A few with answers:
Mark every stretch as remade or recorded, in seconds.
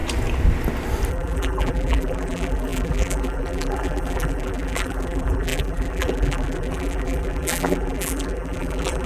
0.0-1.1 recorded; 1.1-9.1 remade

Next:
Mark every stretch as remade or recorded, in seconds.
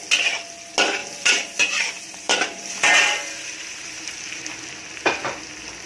0.0-1.0 recorded; 1.0-4.5 remade; 4.5-5.9 recorded